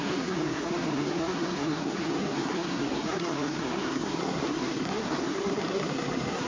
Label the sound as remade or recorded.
remade